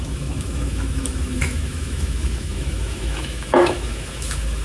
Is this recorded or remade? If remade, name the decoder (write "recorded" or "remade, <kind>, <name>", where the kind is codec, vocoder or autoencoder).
remade, autoencoder, DAC-VAE